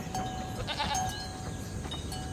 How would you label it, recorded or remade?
recorded